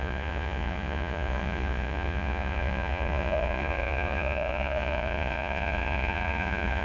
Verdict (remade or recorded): remade